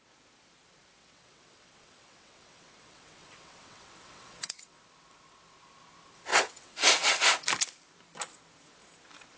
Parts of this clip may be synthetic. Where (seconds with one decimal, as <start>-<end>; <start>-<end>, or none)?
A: 1.0-4.8; 6.3-7.2